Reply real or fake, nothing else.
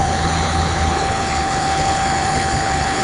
fake